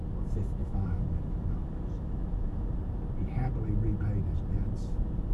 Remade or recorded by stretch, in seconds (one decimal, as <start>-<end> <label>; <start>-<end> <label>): 0.0-0.6 recorded; 0.6-2.7 remade; 2.7-5.3 recorded